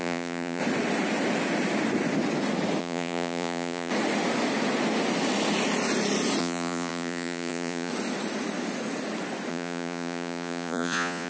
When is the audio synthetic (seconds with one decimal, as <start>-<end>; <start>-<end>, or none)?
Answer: 0.0-0.6; 2.8-3.9; 6.4-7.9; 9.5-11.3